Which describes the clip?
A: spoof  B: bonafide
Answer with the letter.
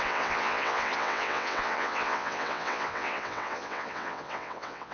A